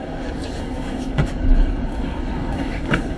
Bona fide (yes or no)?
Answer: no